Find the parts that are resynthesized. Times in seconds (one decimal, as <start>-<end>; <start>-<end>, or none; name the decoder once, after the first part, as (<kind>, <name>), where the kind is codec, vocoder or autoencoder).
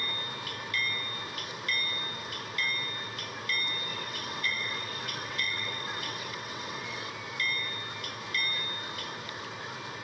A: 3.9-7.1 (vocoder, WaveNeXt)